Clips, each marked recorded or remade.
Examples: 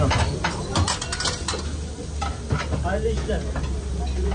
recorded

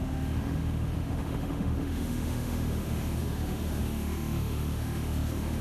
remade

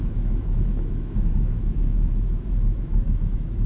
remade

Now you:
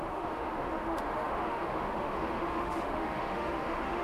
remade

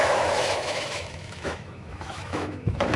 remade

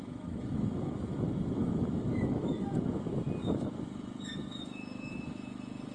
remade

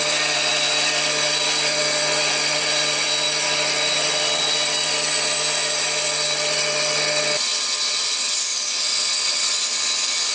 recorded